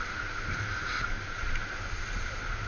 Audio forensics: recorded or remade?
recorded